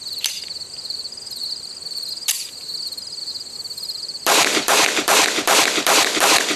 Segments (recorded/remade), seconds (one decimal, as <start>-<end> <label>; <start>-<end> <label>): 0.0-6.6 recorded